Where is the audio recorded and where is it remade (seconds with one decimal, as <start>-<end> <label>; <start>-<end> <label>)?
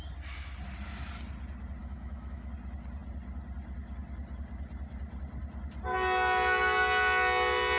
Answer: 0.0-1.8 recorded; 1.8-2.5 remade; 2.5-7.8 recorded